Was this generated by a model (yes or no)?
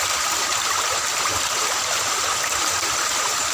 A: yes